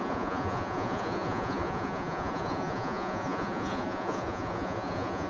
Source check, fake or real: fake